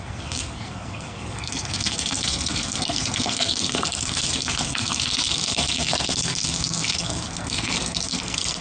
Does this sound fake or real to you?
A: fake